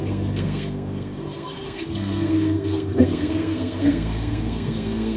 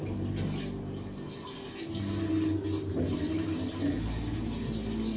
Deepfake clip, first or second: first